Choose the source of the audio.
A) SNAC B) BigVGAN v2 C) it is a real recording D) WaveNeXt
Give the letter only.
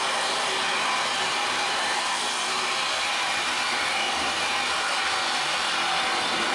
C